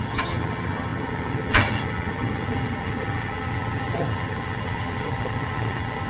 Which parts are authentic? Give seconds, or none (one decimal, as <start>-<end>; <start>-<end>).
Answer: none